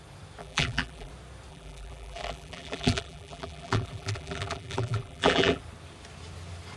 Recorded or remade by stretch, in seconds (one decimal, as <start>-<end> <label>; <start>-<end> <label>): 0.0-0.4 recorded; 0.4-1.1 remade; 1.1-1.5 recorded; 1.5-5.6 remade; 5.6-6.8 recorded